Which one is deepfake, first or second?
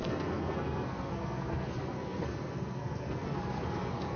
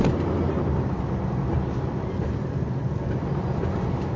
first